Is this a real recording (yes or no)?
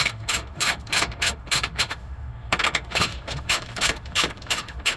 no